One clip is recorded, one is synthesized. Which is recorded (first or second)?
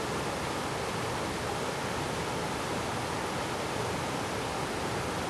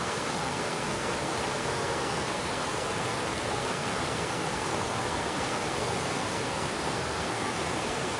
first